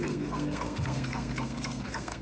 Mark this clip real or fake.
fake